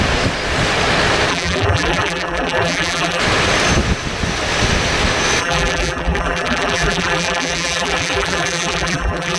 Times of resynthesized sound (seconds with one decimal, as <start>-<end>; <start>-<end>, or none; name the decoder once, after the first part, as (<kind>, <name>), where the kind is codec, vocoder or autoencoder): 1.3-3.2 (vocoder, BigVGAN v2); 5.4-9.4